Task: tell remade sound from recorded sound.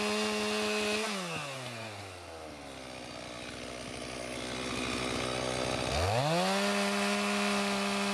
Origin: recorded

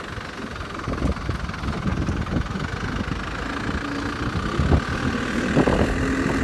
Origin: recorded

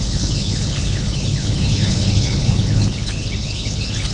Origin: remade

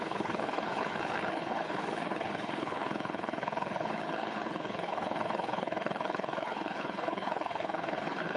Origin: remade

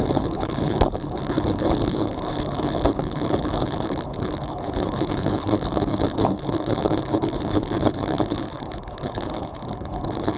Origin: remade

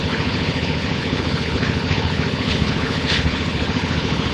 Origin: remade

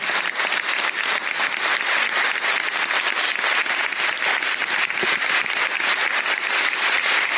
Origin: recorded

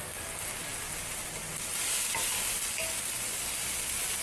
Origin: recorded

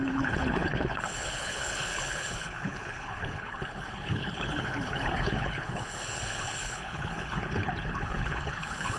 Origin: remade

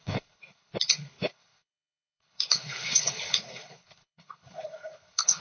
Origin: remade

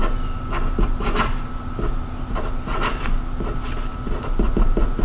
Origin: recorded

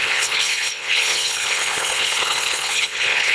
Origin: remade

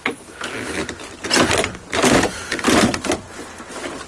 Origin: recorded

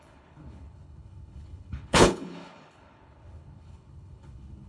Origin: remade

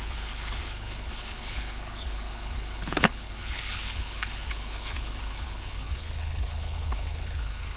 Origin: remade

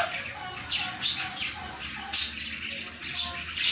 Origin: recorded